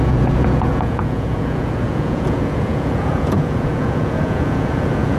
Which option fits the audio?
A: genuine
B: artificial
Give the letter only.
B